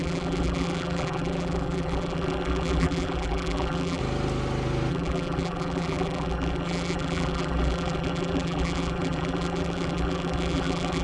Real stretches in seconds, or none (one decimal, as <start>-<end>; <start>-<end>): 4.0-4.9